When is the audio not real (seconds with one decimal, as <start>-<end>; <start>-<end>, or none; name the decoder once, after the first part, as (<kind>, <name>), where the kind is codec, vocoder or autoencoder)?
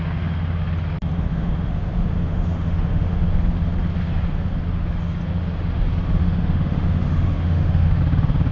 1.3-3.2 (autoencoder, DAC-VAE); 6.2-8.0